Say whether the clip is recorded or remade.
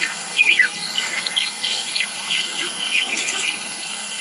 remade